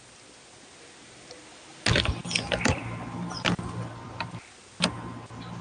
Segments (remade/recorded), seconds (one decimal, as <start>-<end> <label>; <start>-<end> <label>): 0.0-5.6 recorded